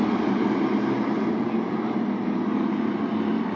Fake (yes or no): no